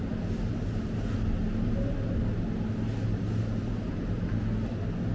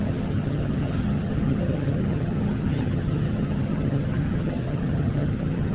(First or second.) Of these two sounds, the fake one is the second